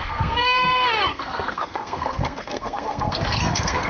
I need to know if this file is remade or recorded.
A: remade